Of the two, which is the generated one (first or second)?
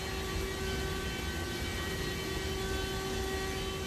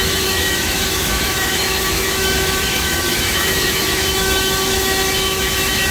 second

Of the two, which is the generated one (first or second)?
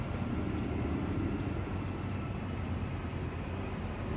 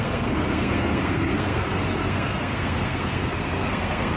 second